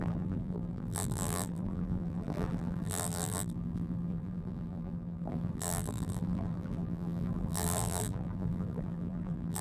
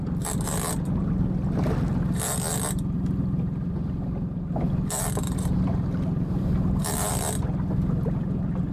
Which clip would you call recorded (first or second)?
second